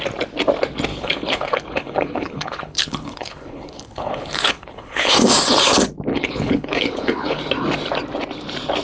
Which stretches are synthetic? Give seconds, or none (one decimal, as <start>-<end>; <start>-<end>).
0.9-5.1; 6.1-7.4